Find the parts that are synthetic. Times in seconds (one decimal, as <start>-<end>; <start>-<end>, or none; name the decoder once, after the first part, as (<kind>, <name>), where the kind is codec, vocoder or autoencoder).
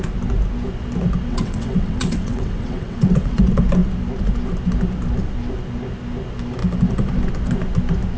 1.3-3.4 (vocoder, WaveNeXt)